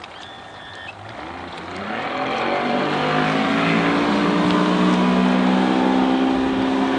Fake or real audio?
real